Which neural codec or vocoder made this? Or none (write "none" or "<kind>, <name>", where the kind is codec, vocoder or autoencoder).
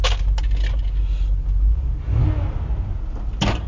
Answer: none